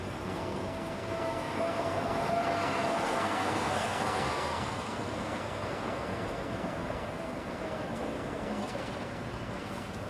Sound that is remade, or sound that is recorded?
remade